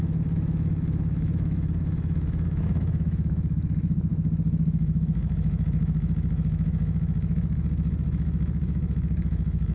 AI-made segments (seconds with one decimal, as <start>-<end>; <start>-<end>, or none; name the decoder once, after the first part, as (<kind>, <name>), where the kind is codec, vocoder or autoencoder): 0.0-9.7 (autoencoder, DAC-VAE)